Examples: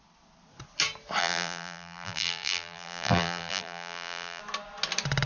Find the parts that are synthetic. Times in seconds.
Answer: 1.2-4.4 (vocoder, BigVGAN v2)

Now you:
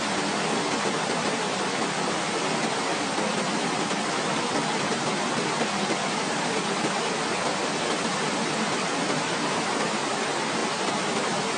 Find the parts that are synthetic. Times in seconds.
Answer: none

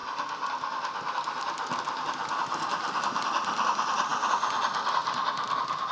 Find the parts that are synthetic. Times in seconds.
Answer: 2.7-3.3 (vocoder, BigVGAN v2)